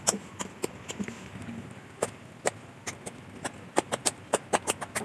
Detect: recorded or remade recorded